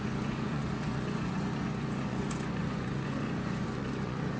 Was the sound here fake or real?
fake